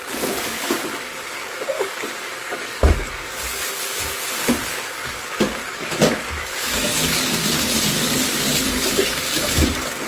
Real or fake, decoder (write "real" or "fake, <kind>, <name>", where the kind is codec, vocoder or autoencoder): fake, codec, DAC